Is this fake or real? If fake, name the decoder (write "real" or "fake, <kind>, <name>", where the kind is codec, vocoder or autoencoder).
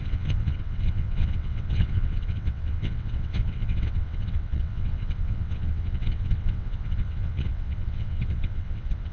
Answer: fake, vocoder, WaveNeXt